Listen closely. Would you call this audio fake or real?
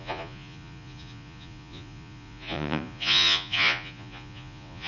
fake